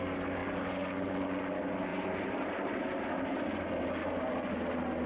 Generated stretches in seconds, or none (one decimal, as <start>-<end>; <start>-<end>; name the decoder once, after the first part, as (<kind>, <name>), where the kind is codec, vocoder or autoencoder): 1.9-3.4 (vocoder, BigVGAN v2)